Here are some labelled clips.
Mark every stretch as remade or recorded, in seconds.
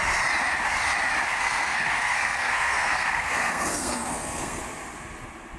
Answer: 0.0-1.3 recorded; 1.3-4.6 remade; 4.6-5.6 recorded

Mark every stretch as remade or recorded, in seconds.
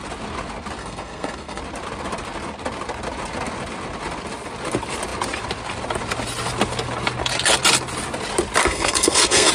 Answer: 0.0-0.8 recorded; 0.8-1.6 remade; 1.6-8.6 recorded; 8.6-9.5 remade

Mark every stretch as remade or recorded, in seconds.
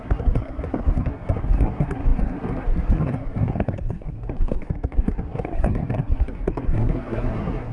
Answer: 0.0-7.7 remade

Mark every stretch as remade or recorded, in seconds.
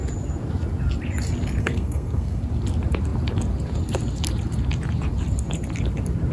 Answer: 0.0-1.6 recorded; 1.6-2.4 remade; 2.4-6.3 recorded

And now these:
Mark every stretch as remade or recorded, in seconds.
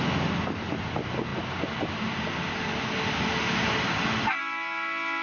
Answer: 0.0-5.2 recorded